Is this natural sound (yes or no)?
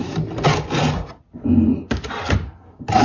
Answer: yes